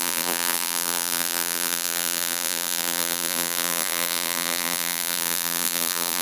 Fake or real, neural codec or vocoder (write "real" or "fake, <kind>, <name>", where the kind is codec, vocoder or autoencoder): fake, vocoder, BigVGAN v2